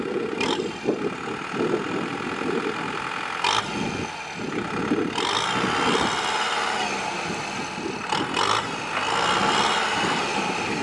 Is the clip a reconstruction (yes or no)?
no